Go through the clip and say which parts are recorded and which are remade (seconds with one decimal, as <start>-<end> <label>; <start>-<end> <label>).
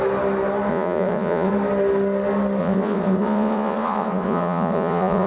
0.0-0.7 recorded; 0.7-1.5 remade; 1.5-2.6 recorded; 2.6-5.3 remade